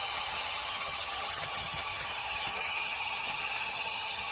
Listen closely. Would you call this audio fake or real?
fake